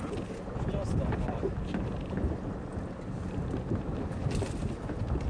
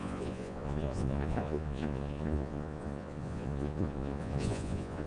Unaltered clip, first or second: first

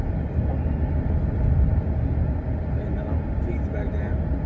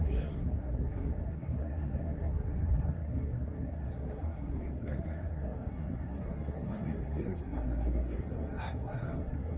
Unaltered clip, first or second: first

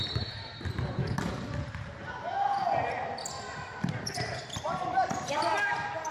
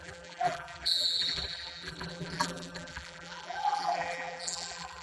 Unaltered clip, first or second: first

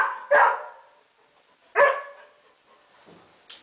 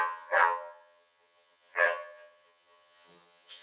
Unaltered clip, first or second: first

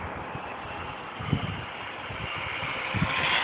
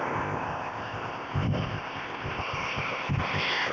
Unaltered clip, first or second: first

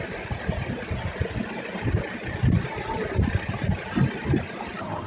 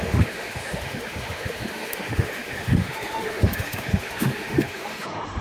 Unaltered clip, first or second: first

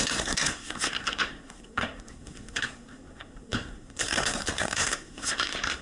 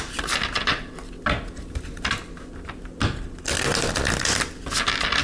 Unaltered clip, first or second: second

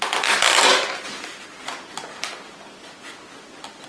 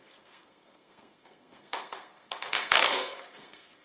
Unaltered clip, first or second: first